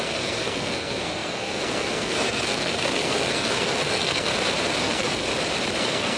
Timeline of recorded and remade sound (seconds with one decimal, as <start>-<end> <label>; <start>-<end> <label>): 0.0-4.3 remade; 4.3-4.8 recorded; 4.8-5.3 remade; 5.3-5.8 recorded; 5.8-6.2 remade